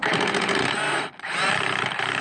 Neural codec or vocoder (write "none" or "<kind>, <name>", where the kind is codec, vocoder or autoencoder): none